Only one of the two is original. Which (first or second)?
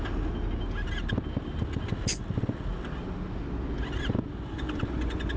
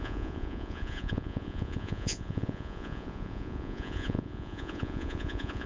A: first